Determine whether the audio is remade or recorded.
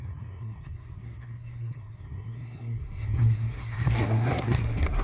remade